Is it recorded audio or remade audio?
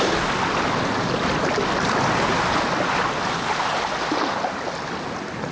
recorded